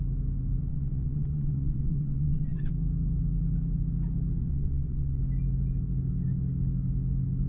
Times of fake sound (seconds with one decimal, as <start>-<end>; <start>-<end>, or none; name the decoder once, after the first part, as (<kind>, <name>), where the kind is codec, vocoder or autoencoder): 0.7-2.7 (vocoder, WaveNeXt); 4.4-5.2